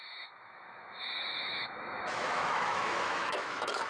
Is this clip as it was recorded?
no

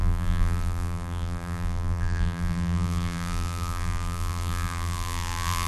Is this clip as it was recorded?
no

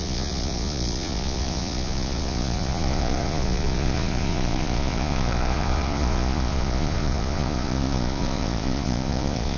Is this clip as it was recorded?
no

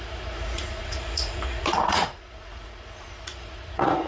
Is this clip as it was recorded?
no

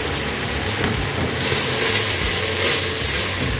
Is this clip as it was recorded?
yes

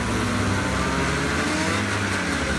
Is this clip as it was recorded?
yes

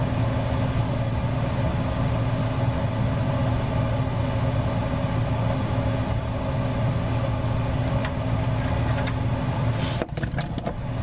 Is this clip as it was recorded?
yes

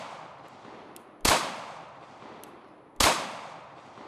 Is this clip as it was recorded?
yes